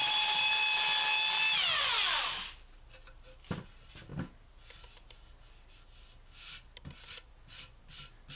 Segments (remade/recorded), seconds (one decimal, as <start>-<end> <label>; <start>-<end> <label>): 0.0-0.6 remade; 0.6-8.4 recorded